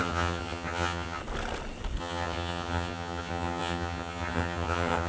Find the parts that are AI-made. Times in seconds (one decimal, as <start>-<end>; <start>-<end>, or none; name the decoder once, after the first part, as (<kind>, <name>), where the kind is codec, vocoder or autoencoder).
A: 0.0-1.2 (vocoder, HiFi-GAN); 2.0-5.1